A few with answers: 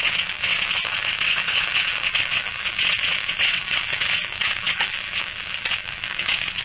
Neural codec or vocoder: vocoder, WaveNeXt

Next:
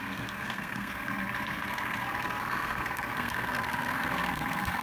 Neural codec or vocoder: codec, SNAC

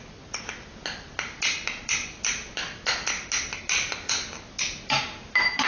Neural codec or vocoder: none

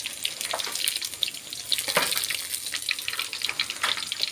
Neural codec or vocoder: none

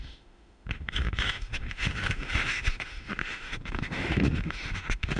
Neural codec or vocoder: autoencoder, DAC-VAE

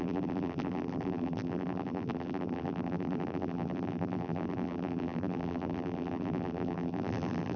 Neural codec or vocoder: vocoder, BigVGAN v2